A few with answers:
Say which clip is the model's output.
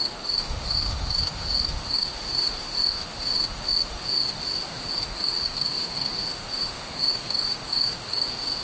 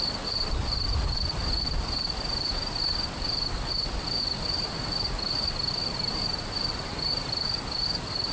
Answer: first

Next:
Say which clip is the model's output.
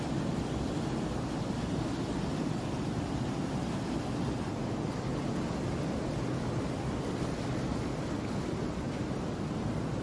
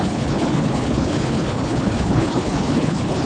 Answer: second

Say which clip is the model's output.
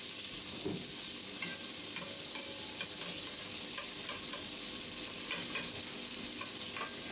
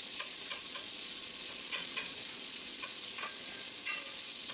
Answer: second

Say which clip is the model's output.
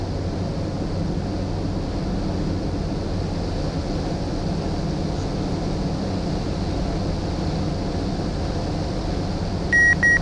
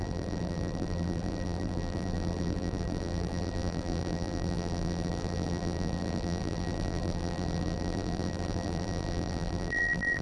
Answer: second